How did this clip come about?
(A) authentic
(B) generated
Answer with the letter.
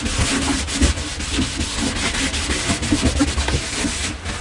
A